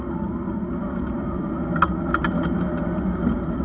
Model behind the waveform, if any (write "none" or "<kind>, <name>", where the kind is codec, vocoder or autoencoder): none